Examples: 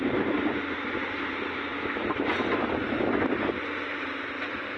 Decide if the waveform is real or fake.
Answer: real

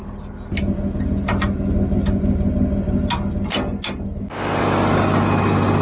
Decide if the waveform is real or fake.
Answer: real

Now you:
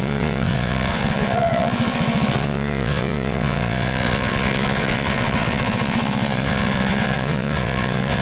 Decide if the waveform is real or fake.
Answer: fake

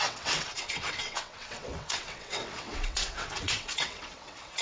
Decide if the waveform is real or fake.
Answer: fake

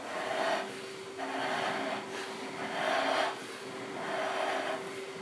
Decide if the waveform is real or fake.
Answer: real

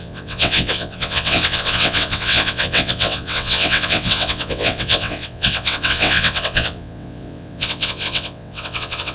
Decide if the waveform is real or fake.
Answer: fake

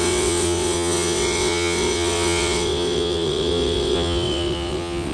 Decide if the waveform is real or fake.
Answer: fake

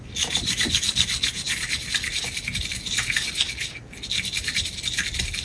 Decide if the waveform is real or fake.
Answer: real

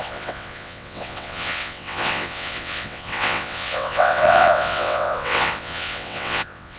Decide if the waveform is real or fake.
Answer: fake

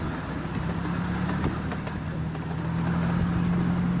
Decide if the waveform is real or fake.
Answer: real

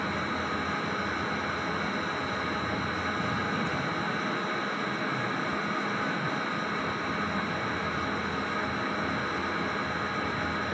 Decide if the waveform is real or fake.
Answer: real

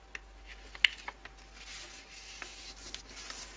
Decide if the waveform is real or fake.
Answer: real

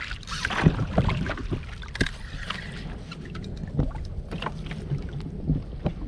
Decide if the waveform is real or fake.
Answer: real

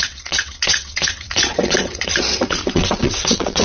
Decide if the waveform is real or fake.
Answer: fake